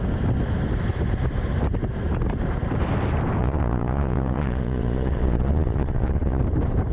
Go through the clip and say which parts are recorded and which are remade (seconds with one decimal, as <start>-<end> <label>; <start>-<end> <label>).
0.0-3.4 recorded; 3.4-6.4 remade; 6.4-6.9 recorded